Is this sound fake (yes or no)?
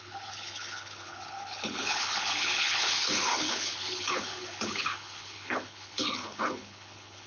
yes